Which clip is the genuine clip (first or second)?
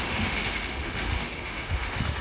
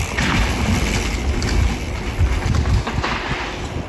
second